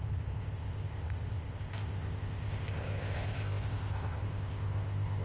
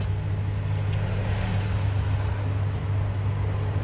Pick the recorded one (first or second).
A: second